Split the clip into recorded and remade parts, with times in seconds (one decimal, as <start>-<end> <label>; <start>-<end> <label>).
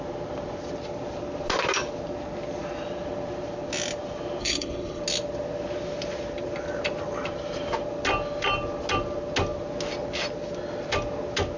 0.0-4.4 recorded; 4.4-5.0 remade; 5.0-11.6 recorded